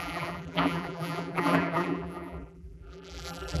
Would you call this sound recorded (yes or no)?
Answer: no